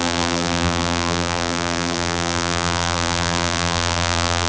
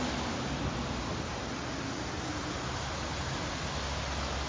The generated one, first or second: first